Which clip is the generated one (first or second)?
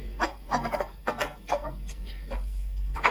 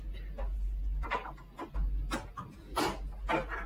first